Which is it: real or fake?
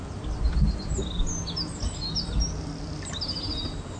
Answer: real